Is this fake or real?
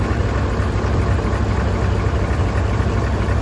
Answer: real